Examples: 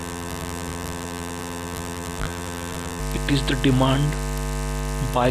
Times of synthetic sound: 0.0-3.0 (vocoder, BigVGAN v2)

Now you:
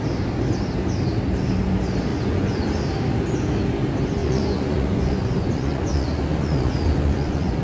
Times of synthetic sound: 2.1-2.6 (vocoder, Vocos); 4.2-7.6

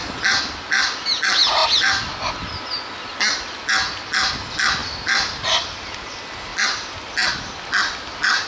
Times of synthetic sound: none

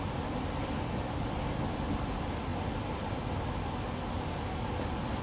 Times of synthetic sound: none

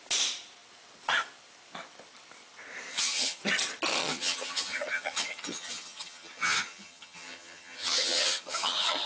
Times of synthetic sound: 2.9-3.4 (vocoder, HiFi-GAN); 4.0-9.1

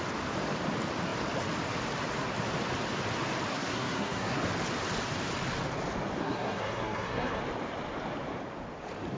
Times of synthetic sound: 3.5-4.4 (codec, SNAC); 6.2-7.4

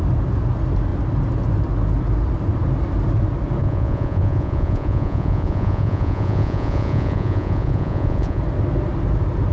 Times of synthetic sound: 3.6-8.4 (vocoder, Vocos)

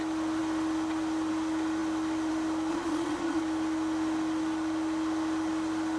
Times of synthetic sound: 2.7-3.4 (vocoder, Vocos)